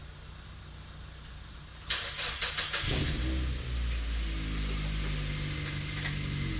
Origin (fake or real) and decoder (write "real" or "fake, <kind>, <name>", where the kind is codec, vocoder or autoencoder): real